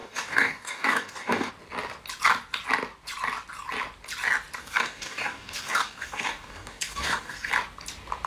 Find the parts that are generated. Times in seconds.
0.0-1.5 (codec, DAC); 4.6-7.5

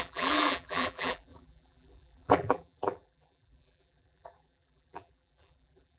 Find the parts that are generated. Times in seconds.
0.0-6.0 (vocoder, BigVGAN v2)

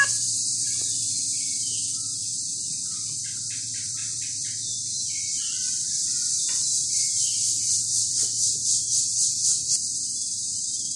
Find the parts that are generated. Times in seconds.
0.4-1.0 (vocoder, BigVGAN v2); 4.0-8.2

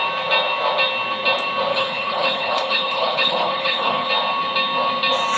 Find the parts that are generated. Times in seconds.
1.7-4.1 (codec, HILCodec)

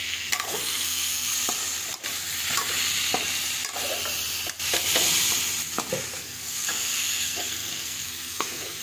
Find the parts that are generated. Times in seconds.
0.0-1.3 (codec, SNAC); 6.2-8.8

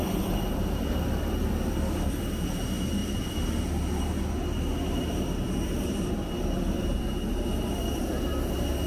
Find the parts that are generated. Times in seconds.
0.0-0.9 (vocoder, BigVGAN v2); 3.0-4.0

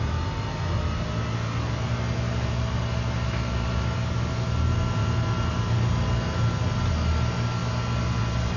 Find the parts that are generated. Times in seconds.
none